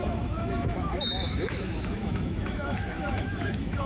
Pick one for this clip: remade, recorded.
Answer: remade